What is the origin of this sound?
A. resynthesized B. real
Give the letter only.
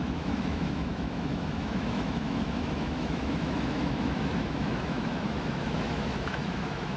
A